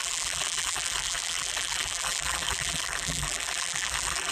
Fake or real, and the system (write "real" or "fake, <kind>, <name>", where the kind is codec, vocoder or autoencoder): fake, vocoder, BigVGAN v2